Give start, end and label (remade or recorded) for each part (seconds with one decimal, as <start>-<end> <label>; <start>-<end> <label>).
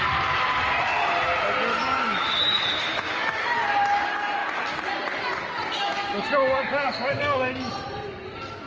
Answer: 0.0-1.7 recorded; 1.7-3.4 remade; 3.4-5.8 recorded; 5.8-7.7 remade; 7.7-8.7 recorded